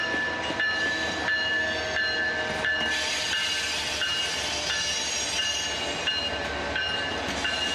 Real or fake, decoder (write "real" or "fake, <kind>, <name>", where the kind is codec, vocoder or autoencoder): real